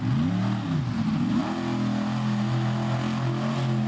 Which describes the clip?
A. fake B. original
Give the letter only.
B